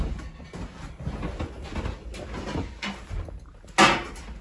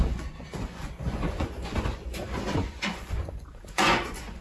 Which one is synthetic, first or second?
second